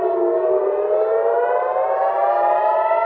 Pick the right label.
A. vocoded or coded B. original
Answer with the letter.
B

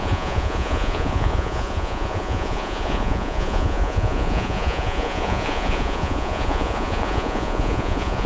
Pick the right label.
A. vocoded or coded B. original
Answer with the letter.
A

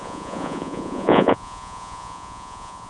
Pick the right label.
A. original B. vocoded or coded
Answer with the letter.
B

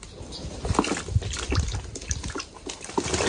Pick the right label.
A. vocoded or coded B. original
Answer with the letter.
B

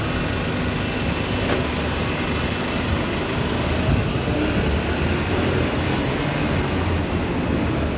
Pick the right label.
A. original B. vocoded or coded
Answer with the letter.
A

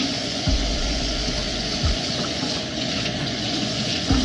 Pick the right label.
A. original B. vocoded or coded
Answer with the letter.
B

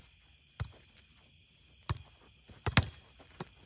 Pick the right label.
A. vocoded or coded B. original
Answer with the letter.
B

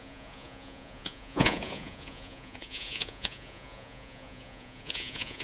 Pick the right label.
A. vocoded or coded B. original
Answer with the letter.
A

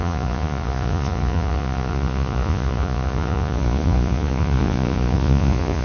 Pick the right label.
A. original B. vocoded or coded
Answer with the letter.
B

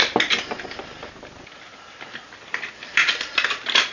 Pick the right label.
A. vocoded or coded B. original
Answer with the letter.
B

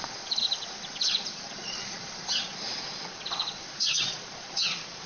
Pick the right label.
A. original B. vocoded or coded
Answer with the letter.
B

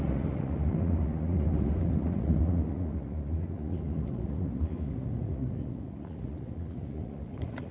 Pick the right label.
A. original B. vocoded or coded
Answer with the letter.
B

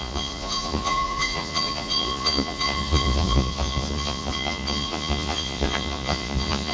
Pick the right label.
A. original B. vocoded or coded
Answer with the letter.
B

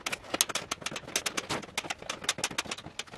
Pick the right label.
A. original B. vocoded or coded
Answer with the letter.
A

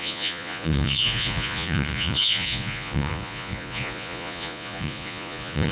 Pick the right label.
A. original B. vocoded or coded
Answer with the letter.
B